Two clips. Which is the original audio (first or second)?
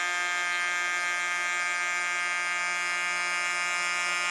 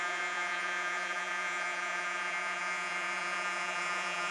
first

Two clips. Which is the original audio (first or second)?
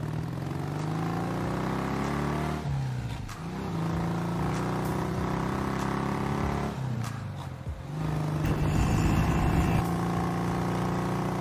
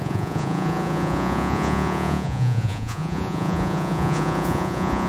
first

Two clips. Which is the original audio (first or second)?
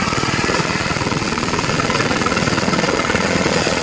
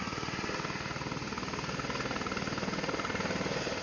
second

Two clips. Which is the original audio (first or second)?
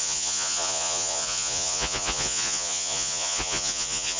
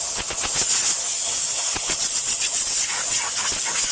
second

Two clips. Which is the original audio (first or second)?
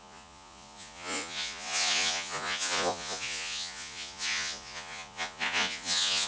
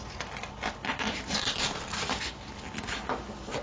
second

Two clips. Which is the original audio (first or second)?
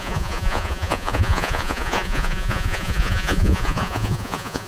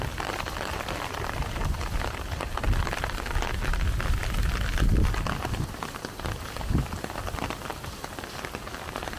second